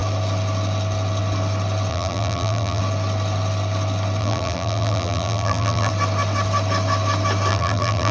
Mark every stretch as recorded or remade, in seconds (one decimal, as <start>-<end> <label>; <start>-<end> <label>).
0.0-1.9 recorded; 1.9-2.8 remade; 2.8-4.2 recorded; 4.2-5.9 remade; 5.9-7.5 recorded; 7.5-8.1 remade